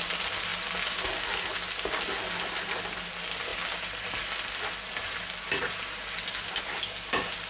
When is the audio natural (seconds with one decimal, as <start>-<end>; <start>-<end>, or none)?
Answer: 0.0-7.5